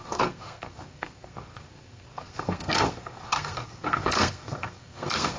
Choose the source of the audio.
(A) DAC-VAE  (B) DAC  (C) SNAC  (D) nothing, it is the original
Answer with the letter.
C